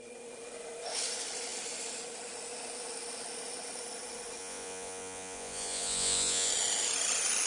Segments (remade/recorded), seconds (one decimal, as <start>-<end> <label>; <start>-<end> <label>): 0.0-4.4 recorded; 4.4-6.5 remade; 6.5-7.5 recorded